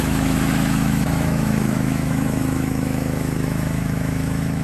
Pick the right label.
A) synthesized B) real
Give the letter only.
A